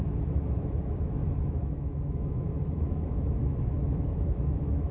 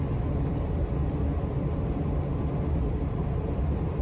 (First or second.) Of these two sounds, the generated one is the first